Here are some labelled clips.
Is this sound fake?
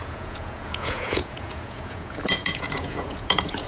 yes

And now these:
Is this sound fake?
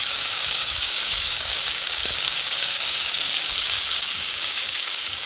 yes